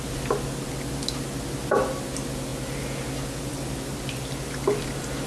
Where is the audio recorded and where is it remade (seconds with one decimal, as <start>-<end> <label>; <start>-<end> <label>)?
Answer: 0.0-5.3 recorded